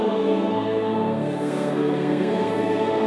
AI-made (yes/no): yes